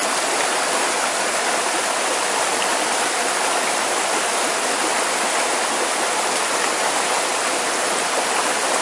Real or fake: real